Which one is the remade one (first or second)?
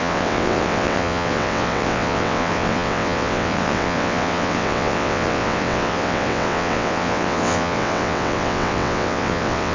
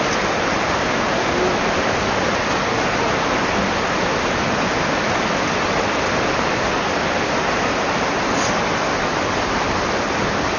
first